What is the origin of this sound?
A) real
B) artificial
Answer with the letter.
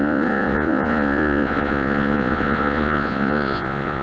B